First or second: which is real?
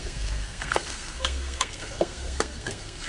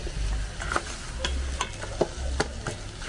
second